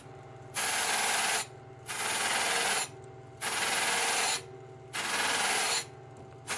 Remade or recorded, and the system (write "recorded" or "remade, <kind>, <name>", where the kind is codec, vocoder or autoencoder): recorded